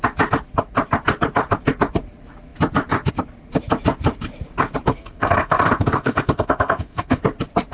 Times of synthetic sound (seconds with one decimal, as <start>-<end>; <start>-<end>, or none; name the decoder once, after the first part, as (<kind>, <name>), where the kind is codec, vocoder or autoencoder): 4.9-7.2 (codec, SNAC)